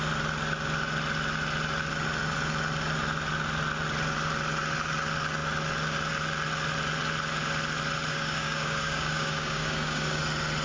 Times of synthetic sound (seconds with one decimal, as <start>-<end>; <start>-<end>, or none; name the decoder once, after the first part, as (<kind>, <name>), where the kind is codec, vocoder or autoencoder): 8.1-10.2 (codec, DAC)